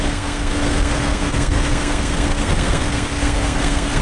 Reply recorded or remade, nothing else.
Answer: remade